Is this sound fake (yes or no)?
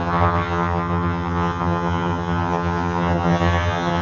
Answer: yes